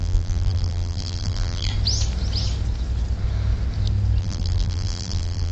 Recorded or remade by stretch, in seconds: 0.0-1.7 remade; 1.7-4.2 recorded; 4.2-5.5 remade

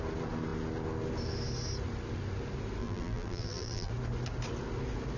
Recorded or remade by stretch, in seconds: 0.0-2.8 recorded; 2.8-3.9 remade; 3.9-5.2 recorded

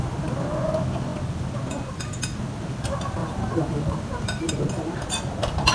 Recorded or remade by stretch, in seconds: 0.0-3.2 recorded; 3.2-4.5 remade; 4.5-5.7 recorded

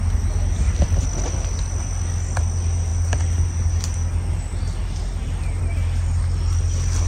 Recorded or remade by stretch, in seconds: 0.0-7.1 recorded